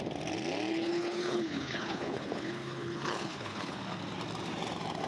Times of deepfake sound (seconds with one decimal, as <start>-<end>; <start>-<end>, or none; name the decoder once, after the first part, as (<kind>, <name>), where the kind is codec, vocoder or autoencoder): 0.7-3.8 (codec, HILCodec)